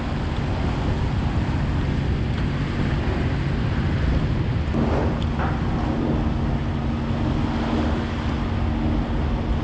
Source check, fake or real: real